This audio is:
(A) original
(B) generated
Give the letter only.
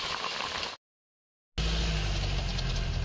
A